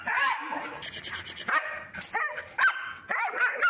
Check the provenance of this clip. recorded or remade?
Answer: recorded